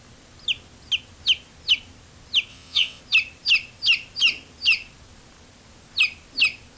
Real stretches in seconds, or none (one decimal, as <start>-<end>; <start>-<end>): 0.0-2.5; 3.0-6.8